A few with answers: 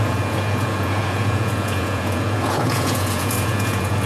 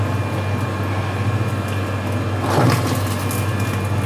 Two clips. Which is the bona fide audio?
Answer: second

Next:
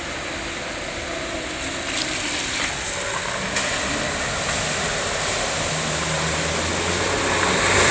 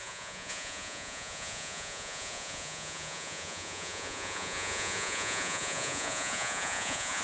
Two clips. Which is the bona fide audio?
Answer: first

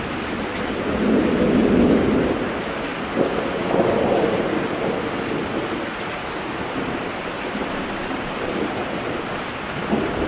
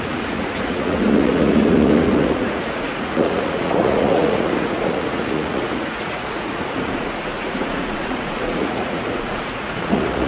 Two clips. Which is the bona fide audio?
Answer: first